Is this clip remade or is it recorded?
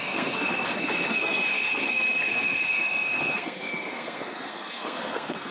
remade